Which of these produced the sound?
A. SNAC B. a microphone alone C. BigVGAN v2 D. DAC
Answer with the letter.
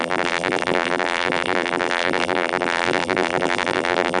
C